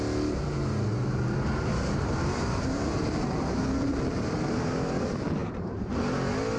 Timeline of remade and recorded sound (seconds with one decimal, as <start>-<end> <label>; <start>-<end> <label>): 0.0-1.7 recorded; 1.7-3.6 remade; 3.6-5.4 recorded; 5.4-5.9 remade; 5.9-6.6 recorded